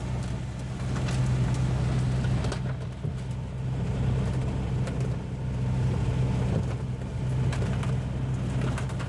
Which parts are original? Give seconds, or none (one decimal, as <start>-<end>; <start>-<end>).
0.0-9.1